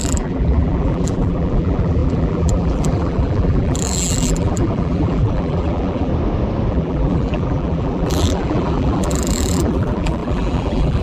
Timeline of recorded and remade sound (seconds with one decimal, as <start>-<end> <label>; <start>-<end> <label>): 0.0-6.1 remade; 6.1-6.7 recorded; 6.7-11.0 remade